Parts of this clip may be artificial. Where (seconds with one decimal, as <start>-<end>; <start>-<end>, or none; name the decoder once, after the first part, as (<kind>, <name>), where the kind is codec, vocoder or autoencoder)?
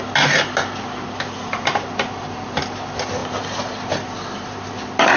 none